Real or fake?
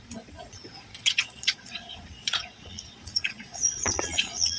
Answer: fake